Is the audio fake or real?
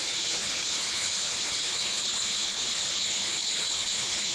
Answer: fake